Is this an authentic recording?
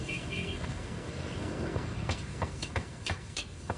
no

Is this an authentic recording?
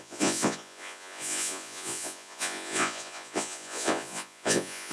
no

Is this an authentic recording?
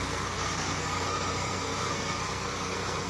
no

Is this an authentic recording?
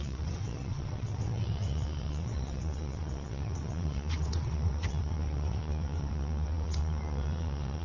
no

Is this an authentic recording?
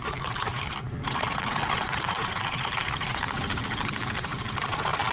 yes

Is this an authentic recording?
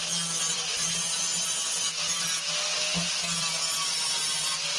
yes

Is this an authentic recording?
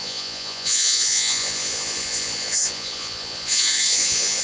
no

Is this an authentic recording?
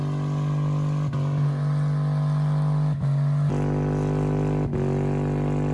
yes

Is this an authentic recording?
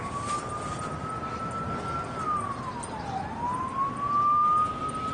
yes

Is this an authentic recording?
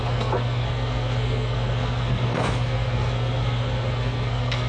no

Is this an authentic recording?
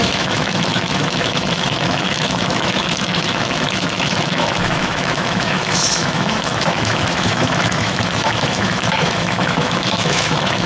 no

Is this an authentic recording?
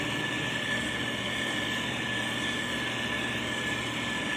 yes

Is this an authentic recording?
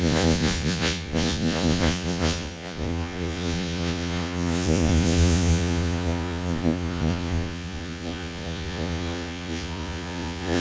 no